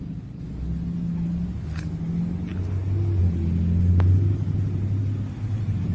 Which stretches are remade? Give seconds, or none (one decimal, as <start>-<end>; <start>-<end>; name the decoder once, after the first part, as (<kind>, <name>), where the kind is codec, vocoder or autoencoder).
none